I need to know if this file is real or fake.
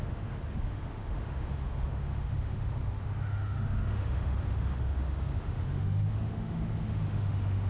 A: fake